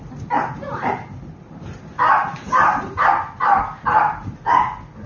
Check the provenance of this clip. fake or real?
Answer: real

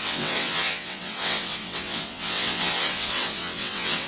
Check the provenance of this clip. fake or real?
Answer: fake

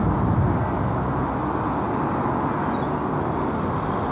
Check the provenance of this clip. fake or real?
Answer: real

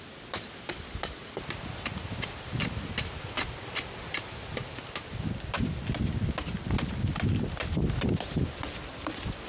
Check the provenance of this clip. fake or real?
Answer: real